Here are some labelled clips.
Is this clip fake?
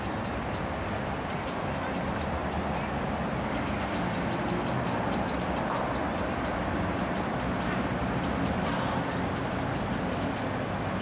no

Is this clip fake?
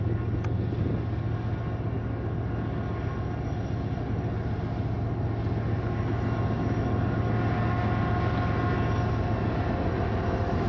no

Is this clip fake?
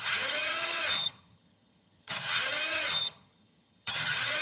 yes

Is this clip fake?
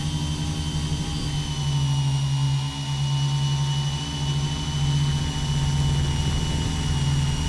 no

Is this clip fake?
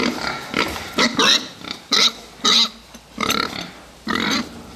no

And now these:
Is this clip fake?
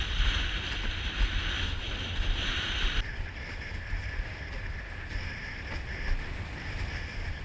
no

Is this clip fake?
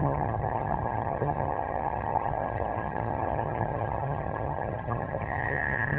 yes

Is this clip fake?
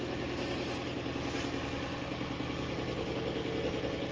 no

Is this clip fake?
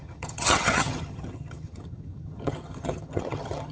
yes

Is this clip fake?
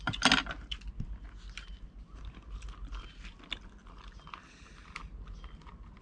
no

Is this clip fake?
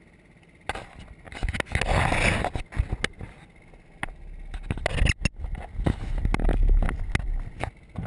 no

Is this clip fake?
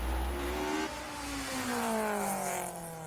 no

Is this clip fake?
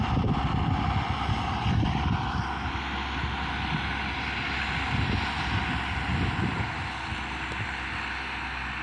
no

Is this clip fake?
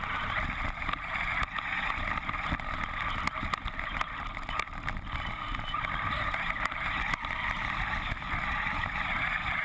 no